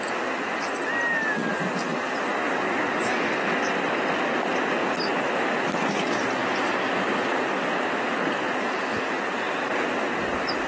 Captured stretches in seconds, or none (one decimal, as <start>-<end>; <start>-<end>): 0.0-10.7